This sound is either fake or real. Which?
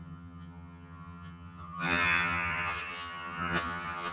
fake